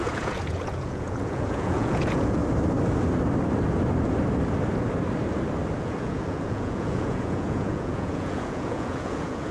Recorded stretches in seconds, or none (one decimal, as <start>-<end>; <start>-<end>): 2.4-5.8